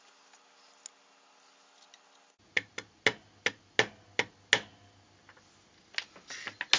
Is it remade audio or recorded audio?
recorded